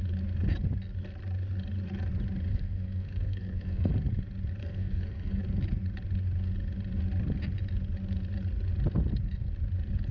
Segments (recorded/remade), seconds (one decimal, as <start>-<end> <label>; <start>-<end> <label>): 0.0-2.5 recorded; 2.5-3.9 remade; 3.9-4.6 recorded; 4.6-5.4 remade; 5.4-10.1 recorded